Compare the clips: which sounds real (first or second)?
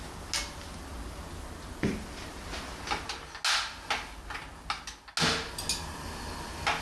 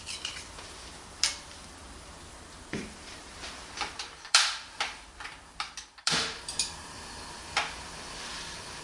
first